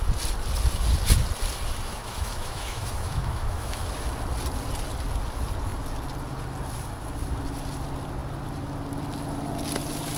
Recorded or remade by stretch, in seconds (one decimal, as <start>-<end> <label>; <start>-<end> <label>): 0.0-1.9 recorded; 1.9-3.9 remade; 3.9-10.2 recorded